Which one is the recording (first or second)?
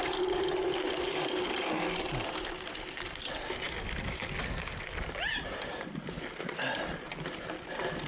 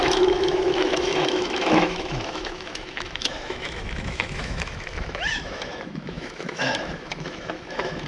first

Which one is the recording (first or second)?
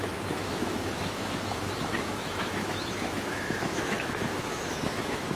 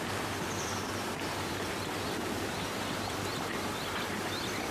second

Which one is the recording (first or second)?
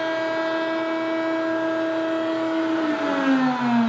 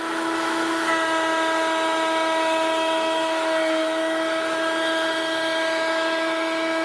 first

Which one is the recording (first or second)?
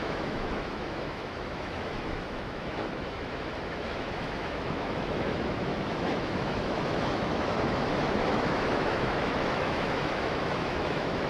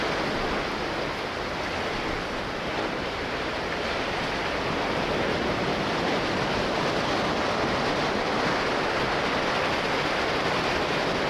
second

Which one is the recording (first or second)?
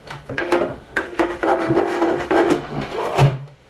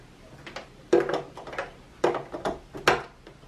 second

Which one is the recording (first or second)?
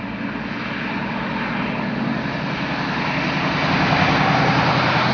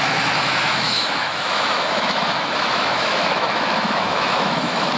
first